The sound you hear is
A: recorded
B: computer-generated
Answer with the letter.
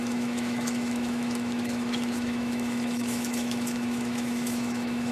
B